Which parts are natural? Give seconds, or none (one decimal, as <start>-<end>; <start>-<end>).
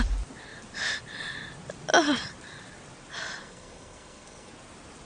0.0-3.4; 4.5-5.1